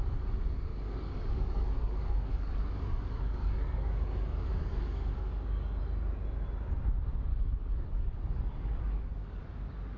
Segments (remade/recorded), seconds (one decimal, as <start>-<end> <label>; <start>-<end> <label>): 0.0-0.7 recorded; 0.7-5.8 remade; 5.8-7.3 recorded; 7.3-9.4 remade; 9.4-10.0 recorded